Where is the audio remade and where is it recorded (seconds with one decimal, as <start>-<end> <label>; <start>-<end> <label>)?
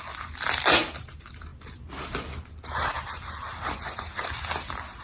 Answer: 0.0-5.0 recorded